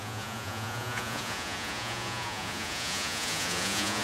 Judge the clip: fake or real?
fake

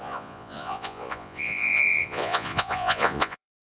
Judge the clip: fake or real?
fake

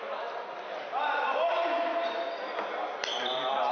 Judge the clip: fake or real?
real